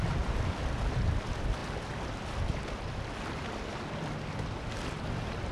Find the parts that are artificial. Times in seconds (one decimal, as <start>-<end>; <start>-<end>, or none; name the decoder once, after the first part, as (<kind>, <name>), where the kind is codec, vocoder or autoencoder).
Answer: 1.6-3.0 (vocoder, BigVGAN v2)